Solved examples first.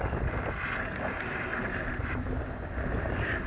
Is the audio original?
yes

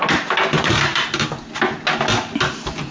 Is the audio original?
yes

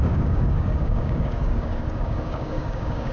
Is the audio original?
no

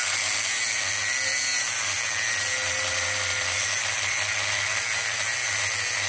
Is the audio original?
yes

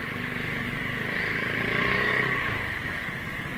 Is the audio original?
no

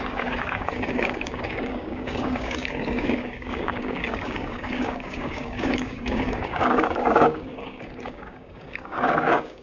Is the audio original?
no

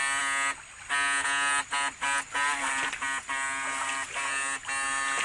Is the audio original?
yes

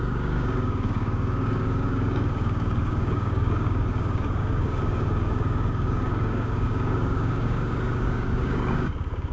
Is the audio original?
no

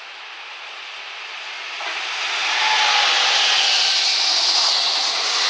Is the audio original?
yes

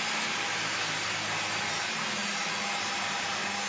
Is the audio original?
yes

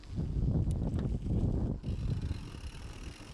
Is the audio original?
yes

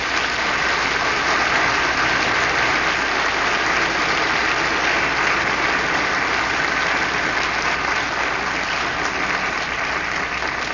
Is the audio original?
yes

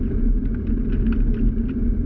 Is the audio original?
yes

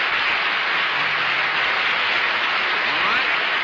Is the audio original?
yes